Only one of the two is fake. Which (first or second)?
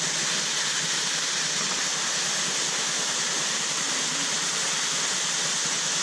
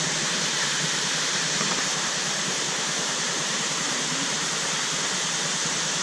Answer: second